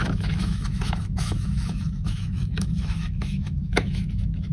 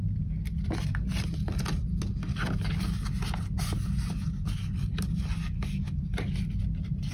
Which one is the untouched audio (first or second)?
second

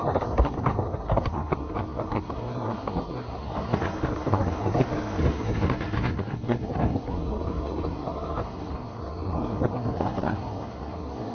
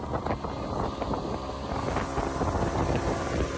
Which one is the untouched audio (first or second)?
second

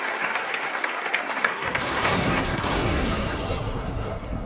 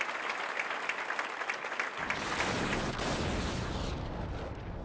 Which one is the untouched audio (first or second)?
second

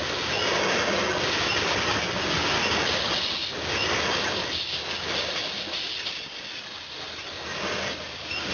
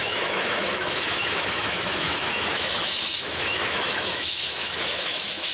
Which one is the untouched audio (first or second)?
first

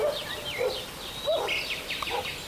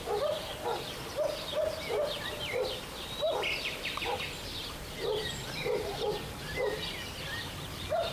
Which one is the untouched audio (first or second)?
first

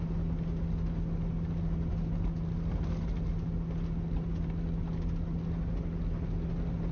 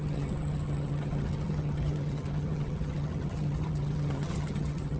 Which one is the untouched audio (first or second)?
first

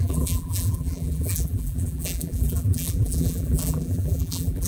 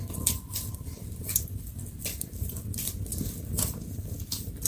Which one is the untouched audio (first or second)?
second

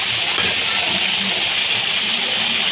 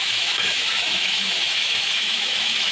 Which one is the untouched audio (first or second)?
first